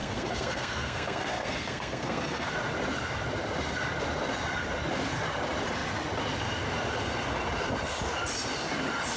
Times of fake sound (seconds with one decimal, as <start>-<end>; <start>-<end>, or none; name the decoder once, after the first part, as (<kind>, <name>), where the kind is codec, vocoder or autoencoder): 0.0-2.5 (codec, SNAC)